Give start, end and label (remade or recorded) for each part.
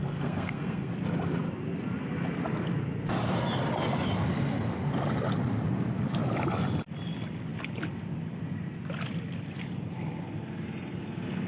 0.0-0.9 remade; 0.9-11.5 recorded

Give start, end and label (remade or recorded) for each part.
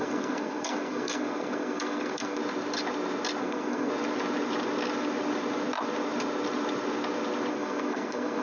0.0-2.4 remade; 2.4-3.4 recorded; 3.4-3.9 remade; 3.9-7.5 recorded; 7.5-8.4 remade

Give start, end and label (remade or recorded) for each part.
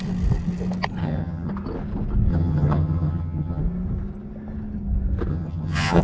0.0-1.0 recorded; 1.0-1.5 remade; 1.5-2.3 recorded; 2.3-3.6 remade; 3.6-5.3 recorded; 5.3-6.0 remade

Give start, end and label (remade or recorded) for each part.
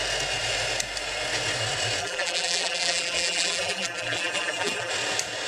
0.0-2.0 recorded; 2.0-4.9 remade; 4.9-5.5 recorded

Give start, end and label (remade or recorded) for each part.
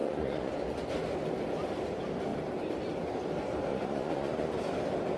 0.0-0.5 remade; 0.5-3.7 recorded; 3.7-4.6 remade; 4.6-5.2 recorded